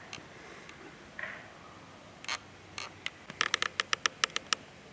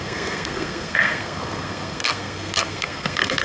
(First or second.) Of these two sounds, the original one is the first